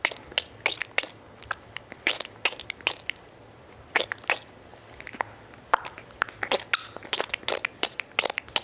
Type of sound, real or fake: real